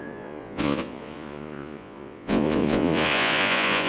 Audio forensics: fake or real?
fake